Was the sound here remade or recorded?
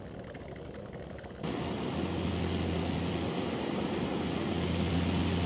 recorded